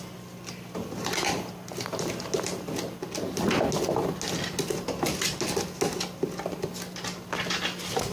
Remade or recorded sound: recorded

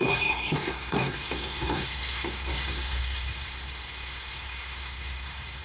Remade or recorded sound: remade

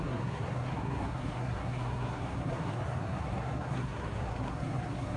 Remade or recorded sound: remade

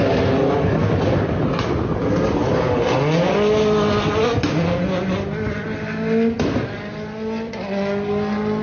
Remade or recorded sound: recorded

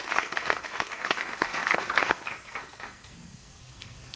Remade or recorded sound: remade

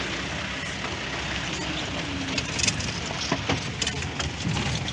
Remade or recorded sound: recorded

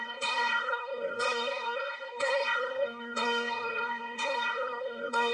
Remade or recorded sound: remade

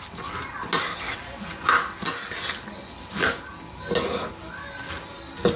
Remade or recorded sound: recorded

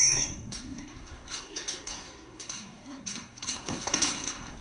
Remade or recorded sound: remade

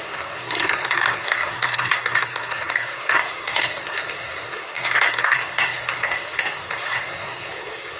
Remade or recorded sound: remade